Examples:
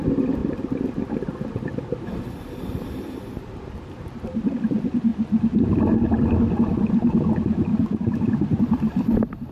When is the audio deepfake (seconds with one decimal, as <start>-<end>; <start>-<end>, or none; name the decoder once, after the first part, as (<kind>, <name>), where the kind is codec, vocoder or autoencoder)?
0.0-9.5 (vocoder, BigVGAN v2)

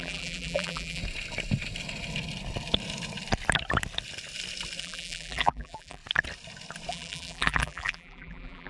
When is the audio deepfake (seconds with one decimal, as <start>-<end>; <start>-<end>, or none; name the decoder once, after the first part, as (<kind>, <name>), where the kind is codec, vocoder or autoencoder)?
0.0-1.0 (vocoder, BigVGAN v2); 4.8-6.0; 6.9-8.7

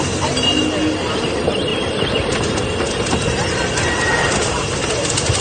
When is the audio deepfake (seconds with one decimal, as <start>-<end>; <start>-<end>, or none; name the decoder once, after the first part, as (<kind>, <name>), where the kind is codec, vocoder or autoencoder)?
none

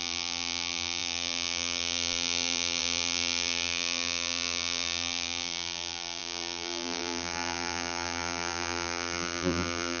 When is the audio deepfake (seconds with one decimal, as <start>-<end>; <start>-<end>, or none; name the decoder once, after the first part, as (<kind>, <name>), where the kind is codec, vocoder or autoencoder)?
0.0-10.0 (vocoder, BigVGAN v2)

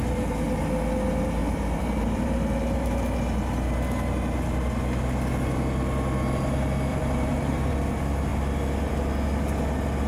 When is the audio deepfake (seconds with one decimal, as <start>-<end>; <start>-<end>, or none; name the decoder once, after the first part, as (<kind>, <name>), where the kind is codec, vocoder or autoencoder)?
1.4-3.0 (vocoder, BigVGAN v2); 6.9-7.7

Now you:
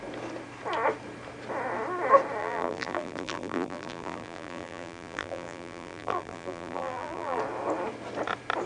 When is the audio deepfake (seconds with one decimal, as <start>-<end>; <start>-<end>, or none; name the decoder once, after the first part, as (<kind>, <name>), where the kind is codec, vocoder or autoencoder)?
2.4-7.4 (vocoder, BigVGAN v2)

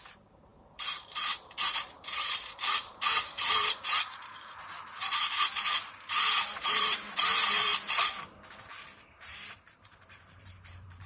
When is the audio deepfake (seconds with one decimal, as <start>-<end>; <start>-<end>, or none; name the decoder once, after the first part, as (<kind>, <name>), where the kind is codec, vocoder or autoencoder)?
0.0-7.7 (vocoder, BigVGAN v2); 9.0-11.1